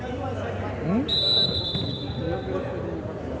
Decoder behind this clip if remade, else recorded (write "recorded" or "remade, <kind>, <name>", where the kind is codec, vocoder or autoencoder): recorded